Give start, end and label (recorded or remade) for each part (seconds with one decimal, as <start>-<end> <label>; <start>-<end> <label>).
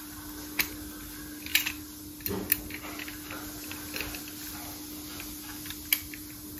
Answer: 0.0-6.6 recorded